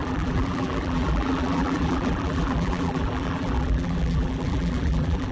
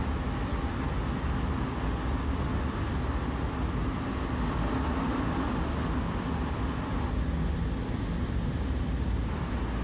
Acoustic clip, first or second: second